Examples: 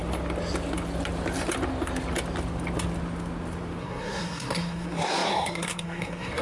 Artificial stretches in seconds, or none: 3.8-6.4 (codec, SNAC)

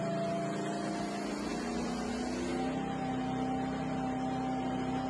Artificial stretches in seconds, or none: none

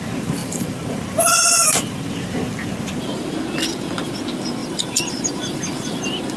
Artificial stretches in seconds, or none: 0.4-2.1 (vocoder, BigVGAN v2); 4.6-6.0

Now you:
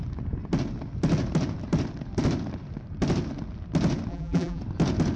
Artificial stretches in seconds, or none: 4.1-4.6 (vocoder, BigVGAN v2)

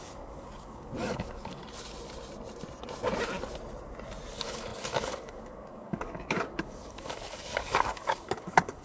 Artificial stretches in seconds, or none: 0.0-1.6 (codec, DAC); 4.3-8.8

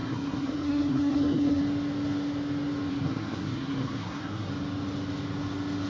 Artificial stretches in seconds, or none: 0.0-1.6 (codec, SNAC); 2.9-4.5

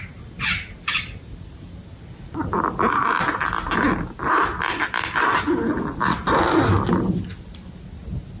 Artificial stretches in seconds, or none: none